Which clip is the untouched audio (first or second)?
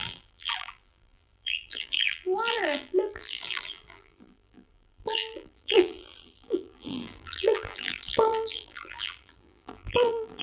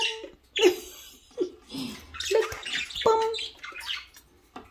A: second